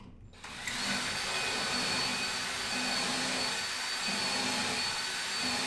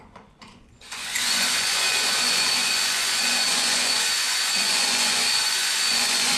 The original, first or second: first